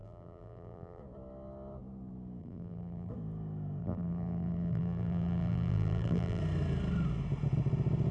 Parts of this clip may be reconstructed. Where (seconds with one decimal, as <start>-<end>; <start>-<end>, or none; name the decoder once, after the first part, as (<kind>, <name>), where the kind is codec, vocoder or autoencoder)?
0.0-1.0 (vocoder, BigVGAN v2); 2.4-3.1; 3.8-6.4